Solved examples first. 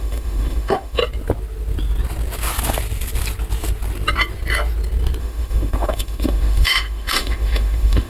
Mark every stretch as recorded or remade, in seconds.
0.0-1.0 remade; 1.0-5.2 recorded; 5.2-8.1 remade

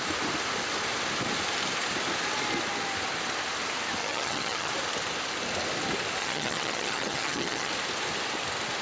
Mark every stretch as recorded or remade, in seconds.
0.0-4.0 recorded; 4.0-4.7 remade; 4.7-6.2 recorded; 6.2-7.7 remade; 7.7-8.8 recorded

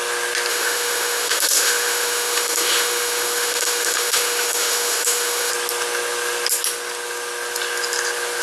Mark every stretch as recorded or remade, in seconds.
0.0-0.5 recorded; 0.5-5.5 remade; 5.5-8.4 recorded